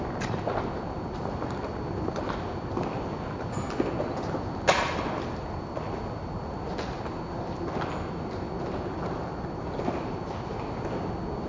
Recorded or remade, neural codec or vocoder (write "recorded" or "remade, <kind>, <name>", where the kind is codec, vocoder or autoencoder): recorded